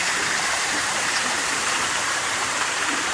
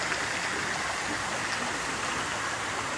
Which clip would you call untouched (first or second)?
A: second